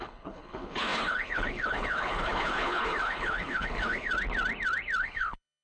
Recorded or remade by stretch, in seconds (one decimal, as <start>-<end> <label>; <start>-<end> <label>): 0.0-4.1 remade; 4.1-5.0 recorded; 5.0-5.6 remade